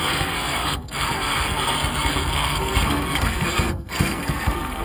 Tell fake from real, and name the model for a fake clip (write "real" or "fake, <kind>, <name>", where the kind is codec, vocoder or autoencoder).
fake, codec, SNAC